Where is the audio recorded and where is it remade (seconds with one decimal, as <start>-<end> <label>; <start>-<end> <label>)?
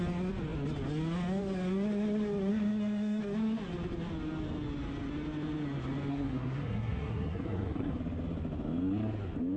0.0-2.5 recorded; 2.5-3.2 remade; 3.2-6.1 recorded; 6.1-8.0 remade; 8.0-9.6 recorded